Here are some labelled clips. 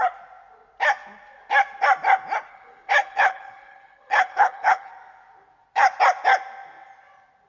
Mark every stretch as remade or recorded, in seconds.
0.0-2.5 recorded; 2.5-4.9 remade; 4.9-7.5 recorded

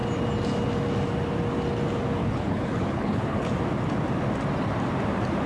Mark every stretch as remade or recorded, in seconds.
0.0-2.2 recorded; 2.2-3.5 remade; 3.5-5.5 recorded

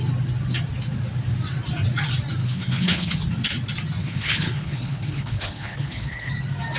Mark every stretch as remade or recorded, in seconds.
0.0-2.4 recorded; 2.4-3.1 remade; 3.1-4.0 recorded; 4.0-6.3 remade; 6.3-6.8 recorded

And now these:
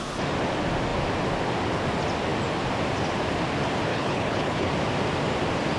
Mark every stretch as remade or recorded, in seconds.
0.0-3.9 recorded; 3.9-4.7 remade; 4.7-5.8 recorded

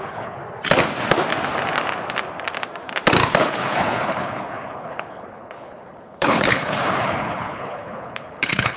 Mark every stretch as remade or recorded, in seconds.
0.0-0.4 remade; 0.4-3.4 recorded; 3.4-8.8 remade

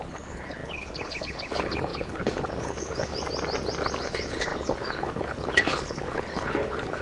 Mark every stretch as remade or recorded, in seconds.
0.0-3.1 remade; 3.1-4.0 recorded; 4.0-7.0 remade

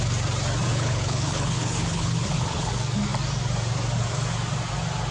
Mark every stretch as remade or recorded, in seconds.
0.0-0.7 recorded; 0.7-2.7 remade; 2.7-5.1 recorded

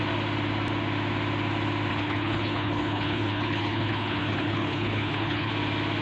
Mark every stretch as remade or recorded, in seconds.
0.0-1.9 recorded; 1.9-5.5 remade; 5.5-6.0 recorded